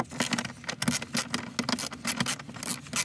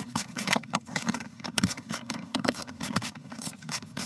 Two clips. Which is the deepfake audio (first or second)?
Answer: second